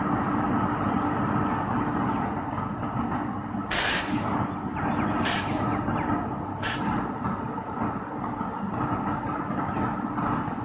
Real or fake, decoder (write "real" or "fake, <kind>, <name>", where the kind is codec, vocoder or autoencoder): real